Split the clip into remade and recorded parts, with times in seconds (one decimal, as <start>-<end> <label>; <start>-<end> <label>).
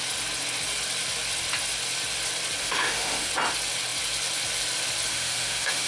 0.0-2.6 recorded; 2.6-3.3 remade; 3.3-5.1 recorded; 5.1-5.9 remade